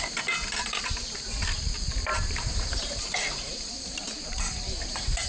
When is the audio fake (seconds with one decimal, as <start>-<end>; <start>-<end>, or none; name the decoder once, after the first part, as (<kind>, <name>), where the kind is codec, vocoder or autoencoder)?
2.1-5.3 (vocoder, BigVGAN v2)